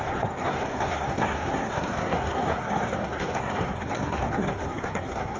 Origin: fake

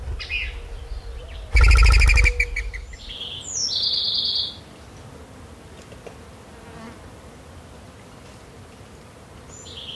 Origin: real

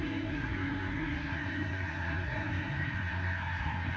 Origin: fake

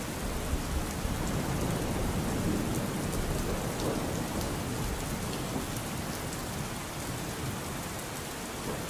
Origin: real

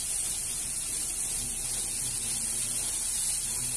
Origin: real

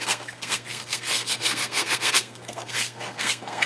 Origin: fake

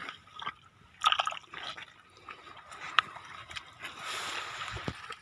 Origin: real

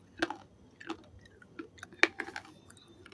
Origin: real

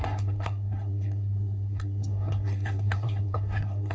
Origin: fake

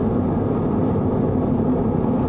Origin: real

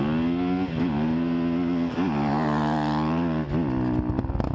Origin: real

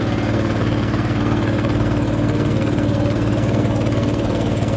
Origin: fake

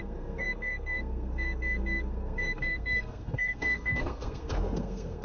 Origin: fake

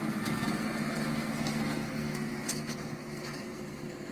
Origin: fake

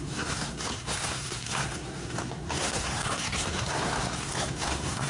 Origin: fake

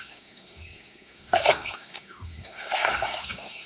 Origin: fake